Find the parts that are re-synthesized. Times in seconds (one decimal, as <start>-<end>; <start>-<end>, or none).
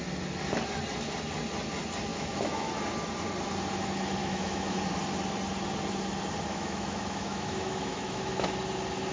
2.1-2.7; 4.2-4.8; 6.5-8.5